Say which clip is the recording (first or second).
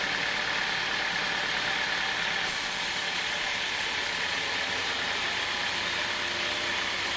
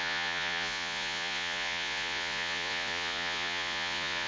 first